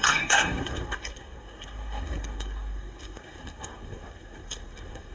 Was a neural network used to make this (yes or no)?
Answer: yes